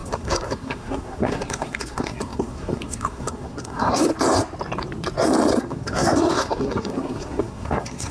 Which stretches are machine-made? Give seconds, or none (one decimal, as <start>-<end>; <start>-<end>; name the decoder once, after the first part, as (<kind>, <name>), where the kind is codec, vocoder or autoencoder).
0.0-4.1 (codec, SNAC); 5.6-8.1